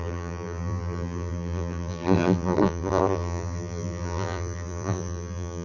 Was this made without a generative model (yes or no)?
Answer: no